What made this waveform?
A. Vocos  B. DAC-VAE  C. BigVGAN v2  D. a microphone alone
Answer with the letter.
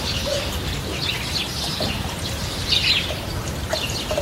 D